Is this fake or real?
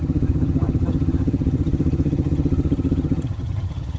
fake